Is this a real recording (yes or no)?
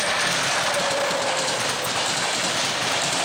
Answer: yes